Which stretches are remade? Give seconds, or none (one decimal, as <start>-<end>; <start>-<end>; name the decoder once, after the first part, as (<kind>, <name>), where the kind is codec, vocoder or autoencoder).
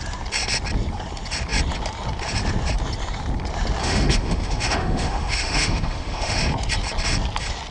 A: 3.8-6.4 (autoencoder, DAC-VAE)